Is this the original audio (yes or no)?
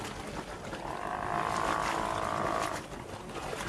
yes